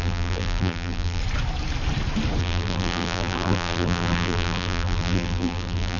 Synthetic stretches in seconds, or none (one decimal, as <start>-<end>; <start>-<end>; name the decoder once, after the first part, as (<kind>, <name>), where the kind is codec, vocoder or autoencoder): 0.0-1.2 (vocoder, BigVGAN v2); 2.4-6.0